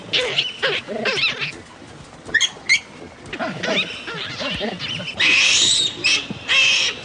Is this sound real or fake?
real